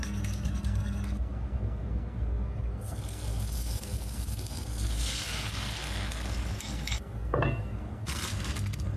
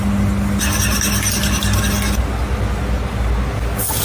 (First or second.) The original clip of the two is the second